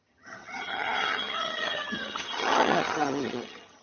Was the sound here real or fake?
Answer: fake